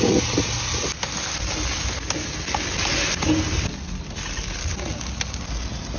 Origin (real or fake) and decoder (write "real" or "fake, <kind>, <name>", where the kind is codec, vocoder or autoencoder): real